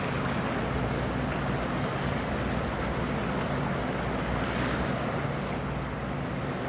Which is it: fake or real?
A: real